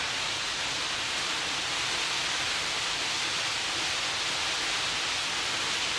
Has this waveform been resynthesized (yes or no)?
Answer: no